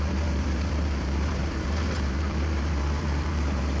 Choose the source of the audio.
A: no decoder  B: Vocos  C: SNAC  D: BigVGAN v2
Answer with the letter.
D